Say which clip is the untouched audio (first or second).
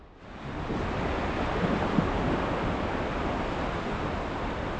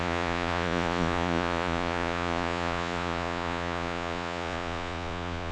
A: first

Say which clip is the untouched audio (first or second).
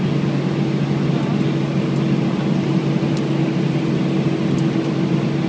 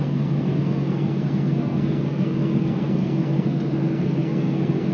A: first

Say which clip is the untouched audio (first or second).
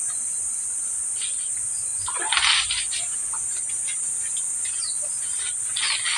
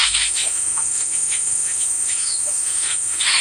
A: first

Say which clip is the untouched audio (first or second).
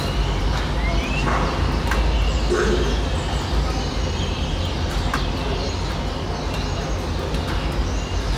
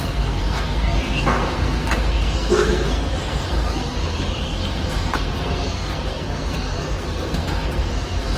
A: first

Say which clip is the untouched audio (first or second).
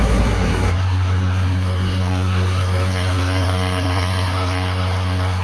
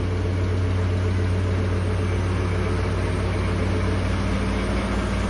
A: second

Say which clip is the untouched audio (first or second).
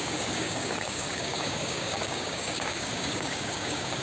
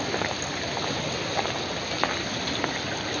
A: second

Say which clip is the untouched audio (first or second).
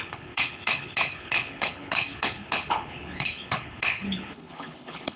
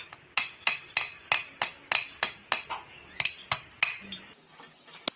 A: second